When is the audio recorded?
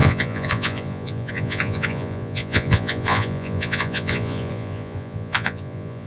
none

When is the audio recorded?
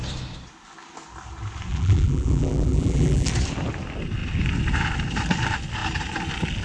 0.0-1.7; 3.3-6.6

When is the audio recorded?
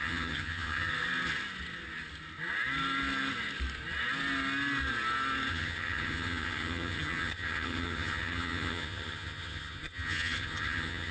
0.9-5.5